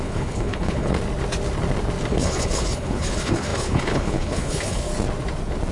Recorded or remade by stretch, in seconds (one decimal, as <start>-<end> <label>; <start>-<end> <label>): 0.0-1.0 remade; 1.0-2.1 recorded; 2.1-4.9 remade; 4.9-5.7 recorded